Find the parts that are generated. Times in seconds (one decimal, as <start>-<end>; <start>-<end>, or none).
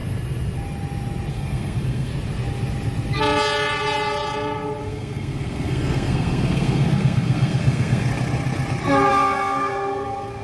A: 1.3-2.1; 4.8-8.1; 9.1-10.4